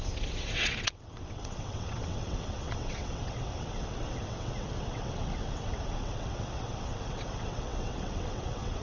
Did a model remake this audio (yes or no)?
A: yes